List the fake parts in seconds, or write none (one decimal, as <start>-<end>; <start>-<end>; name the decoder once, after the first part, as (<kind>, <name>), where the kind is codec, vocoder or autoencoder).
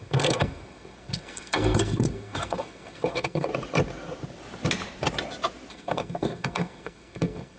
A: 0.0-3.5 (codec, SNAC); 5.7-7.6